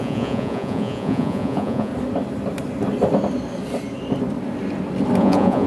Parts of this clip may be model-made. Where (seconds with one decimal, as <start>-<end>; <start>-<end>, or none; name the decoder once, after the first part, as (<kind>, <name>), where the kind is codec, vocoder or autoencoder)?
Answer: 0.0-1.9 (vocoder, Vocos); 5.2-5.7